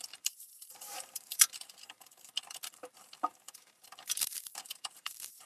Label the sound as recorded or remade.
remade